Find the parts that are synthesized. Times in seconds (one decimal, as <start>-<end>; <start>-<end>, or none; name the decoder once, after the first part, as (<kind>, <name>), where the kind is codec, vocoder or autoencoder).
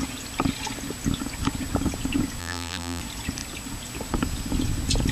2.4-3.0 (vocoder, BigVGAN v2)